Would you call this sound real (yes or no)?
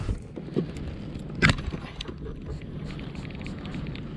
yes